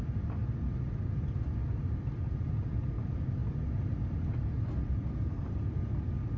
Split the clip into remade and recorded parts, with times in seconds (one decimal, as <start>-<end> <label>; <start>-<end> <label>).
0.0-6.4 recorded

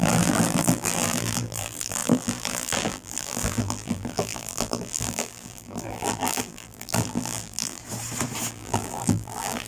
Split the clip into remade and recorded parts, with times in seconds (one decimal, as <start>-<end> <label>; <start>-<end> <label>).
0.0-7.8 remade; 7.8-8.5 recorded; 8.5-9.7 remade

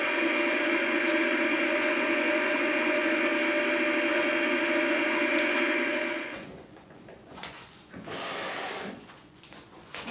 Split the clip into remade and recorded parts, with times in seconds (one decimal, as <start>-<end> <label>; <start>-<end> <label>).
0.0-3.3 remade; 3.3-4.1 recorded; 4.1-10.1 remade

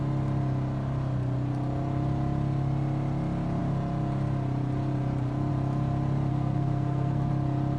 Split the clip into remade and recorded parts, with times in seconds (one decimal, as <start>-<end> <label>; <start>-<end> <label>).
0.0-6.3 recorded; 6.3-7.3 remade; 7.3-7.8 recorded

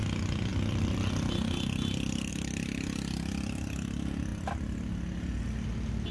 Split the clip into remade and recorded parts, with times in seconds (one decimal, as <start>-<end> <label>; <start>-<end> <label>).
0.0-6.1 recorded

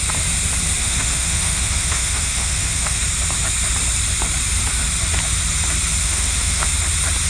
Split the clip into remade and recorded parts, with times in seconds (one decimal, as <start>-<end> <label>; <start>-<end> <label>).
0.0-0.8 recorded; 0.8-3.0 remade; 3.0-6.0 recorded; 6.0-6.7 remade; 6.7-7.3 recorded

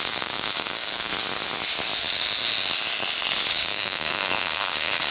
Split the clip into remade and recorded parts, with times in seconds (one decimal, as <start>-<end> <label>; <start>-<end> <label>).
0.0-1.1 remade; 1.1-3.5 recorded; 3.5-5.1 remade

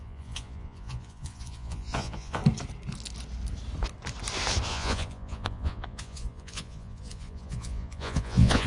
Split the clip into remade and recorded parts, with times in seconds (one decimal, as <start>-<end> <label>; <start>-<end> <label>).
0.0-2.4 remade; 2.4-4.7 recorded; 4.7-8.7 remade